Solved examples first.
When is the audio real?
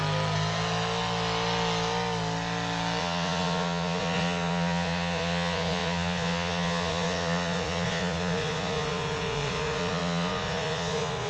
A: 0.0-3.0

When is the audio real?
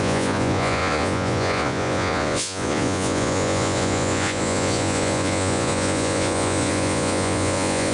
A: none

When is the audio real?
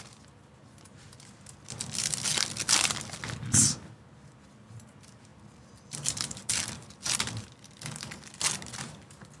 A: 0.0-9.4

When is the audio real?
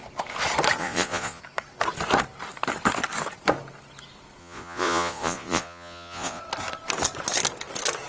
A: 0.0-0.8; 1.4-4.4; 6.4-8.1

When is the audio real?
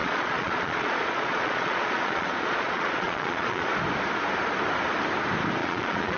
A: 3.7-5.6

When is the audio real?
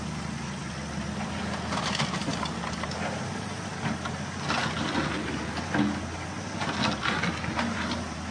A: 0.0-8.3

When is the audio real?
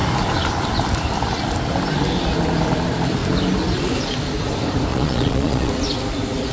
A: 0.0-4.9; 5.7-6.5